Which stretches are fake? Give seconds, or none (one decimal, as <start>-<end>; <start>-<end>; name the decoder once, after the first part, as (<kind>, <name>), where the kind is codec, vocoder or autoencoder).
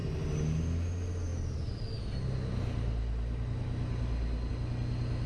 none